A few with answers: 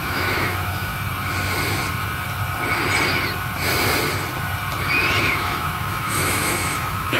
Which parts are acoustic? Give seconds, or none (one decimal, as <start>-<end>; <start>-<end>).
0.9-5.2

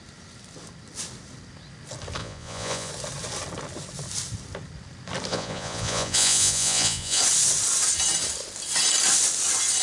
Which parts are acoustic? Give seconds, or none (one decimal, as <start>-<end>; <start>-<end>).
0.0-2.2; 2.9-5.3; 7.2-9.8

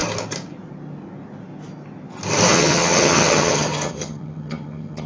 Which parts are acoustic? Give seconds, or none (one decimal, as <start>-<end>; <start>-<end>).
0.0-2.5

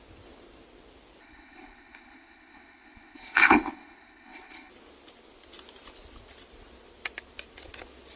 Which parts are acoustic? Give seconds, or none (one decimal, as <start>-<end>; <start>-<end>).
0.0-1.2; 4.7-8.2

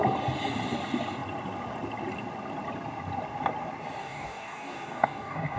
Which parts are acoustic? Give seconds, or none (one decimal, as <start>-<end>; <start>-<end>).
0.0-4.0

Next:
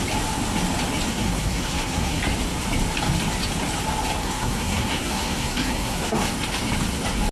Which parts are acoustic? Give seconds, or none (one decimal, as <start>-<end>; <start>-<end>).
0.0-1.1; 2.2-4.2; 6.3-7.3

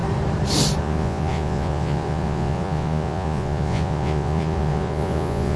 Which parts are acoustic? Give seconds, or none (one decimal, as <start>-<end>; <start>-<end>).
0.0-0.8